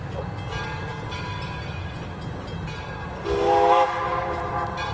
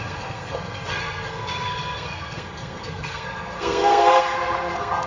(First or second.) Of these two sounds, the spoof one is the second